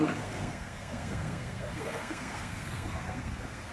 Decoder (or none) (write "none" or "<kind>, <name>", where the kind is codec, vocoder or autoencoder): codec, SNAC